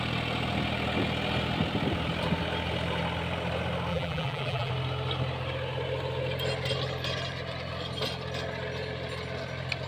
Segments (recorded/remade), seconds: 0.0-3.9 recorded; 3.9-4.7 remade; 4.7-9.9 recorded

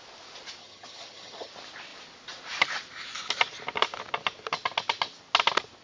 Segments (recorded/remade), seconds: 0.0-0.6 recorded; 0.6-1.5 remade; 1.5-5.8 recorded

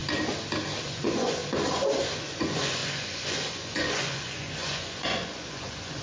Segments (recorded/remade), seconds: 0.0-0.8 recorded; 0.8-1.4 remade; 1.4-2.1 recorded; 2.1-6.0 remade